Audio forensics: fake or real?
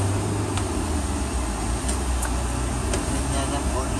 real